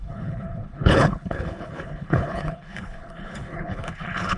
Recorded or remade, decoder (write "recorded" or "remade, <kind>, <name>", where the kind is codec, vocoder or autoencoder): remade, codec, HILCodec